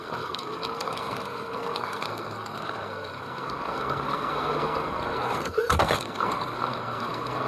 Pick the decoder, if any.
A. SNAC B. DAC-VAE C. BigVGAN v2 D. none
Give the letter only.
A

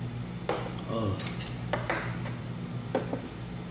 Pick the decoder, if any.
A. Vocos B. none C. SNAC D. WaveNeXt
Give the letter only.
B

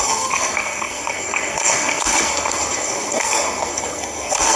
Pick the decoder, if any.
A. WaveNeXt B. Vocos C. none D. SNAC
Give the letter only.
D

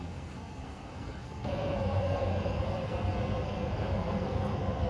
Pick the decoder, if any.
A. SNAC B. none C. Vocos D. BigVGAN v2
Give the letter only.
A